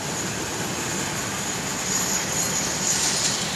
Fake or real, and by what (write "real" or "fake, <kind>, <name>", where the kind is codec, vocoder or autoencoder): real